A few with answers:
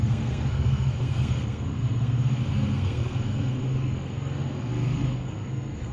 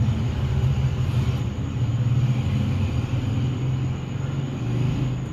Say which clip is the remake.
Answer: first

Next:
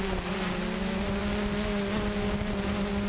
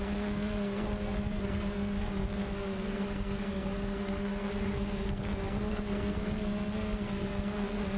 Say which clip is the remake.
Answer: second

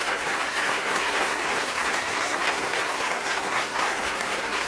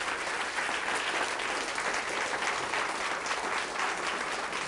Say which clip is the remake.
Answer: first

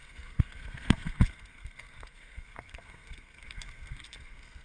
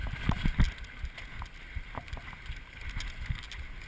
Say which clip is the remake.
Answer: first